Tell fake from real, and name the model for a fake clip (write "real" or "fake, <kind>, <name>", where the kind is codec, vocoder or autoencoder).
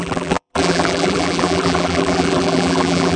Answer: fake, vocoder, BigVGAN v2